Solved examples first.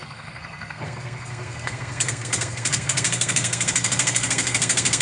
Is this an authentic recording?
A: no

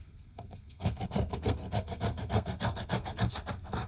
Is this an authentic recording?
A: no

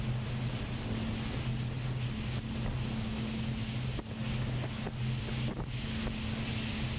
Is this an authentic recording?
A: yes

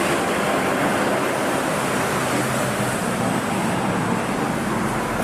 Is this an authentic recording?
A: yes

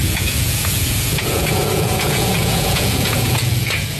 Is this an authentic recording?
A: no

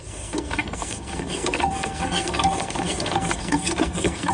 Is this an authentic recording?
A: no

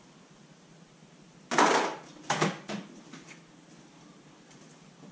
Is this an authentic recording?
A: yes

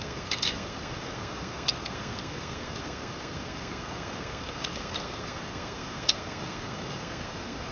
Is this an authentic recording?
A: no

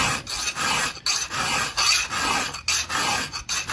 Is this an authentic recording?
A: yes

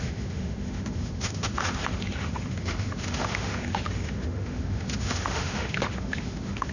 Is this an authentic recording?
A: no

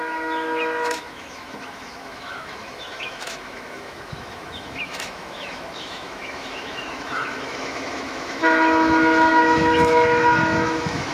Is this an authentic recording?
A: no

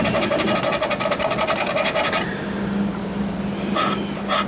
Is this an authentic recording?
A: yes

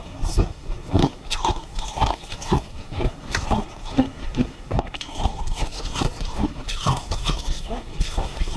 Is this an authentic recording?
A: no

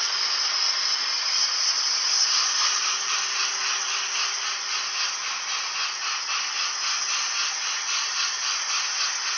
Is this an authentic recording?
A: yes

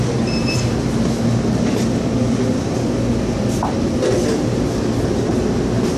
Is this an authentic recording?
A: yes